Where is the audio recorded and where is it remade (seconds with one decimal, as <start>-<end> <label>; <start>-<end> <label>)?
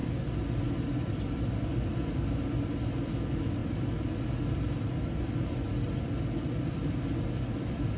0.0-8.0 recorded